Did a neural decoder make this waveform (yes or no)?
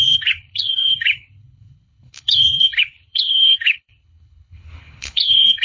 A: yes